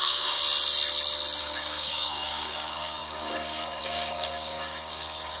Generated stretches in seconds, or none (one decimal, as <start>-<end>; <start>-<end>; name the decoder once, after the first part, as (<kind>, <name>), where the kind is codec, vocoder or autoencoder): 0.0-0.4 (codec, DAC); 1.4-5.4